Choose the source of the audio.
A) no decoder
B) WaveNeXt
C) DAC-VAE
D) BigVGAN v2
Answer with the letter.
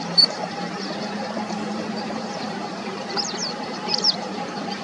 D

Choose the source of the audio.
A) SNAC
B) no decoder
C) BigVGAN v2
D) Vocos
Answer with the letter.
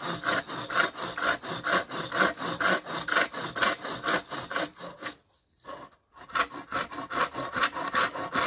B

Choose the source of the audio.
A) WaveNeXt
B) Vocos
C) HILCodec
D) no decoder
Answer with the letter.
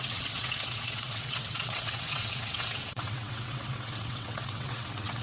A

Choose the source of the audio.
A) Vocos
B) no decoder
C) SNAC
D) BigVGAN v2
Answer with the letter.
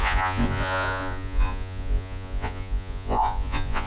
A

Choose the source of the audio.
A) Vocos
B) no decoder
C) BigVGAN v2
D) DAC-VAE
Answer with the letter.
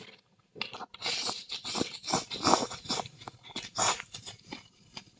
B